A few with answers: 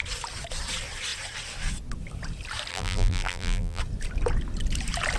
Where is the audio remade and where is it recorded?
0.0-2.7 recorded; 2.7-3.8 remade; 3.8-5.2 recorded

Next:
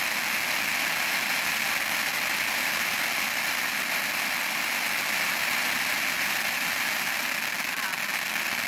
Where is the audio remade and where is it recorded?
0.0-7.9 recorded; 7.9-8.7 remade

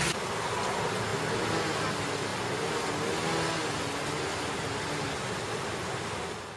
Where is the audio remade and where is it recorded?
0.0-6.6 recorded

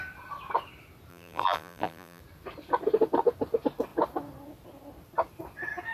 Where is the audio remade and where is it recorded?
0.0-1.1 recorded; 1.1-2.2 remade; 2.2-5.9 recorded

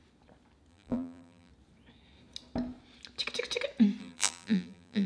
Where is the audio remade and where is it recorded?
0.0-0.7 recorded; 0.7-1.5 remade; 1.5-4.0 recorded; 4.0-5.1 remade

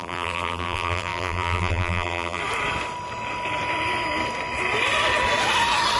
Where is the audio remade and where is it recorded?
0.0-2.4 remade; 2.4-6.0 recorded